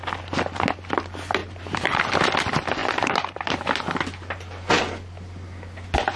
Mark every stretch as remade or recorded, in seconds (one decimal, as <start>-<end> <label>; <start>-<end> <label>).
0.0-1.4 recorded; 1.4-2.0 remade; 2.0-2.8 recorded; 2.8-3.8 remade; 3.8-6.2 recorded